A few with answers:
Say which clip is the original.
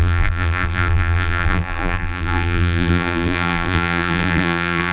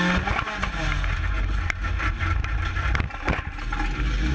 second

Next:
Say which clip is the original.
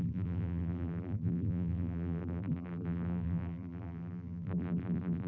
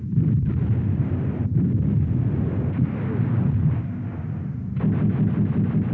second